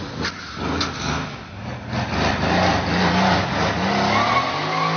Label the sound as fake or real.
real